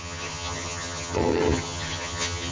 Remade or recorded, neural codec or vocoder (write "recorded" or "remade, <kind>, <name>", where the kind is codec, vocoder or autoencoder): remade, vocoder, HiFi-GAN